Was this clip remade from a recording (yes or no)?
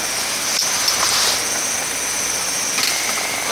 no